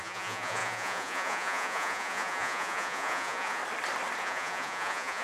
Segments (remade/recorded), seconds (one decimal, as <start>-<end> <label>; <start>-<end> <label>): 0.0-3.6 remade; 3.6-4.2 recorded; 4.2-5.2 remade